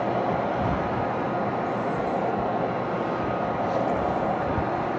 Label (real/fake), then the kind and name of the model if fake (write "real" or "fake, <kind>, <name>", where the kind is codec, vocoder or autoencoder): real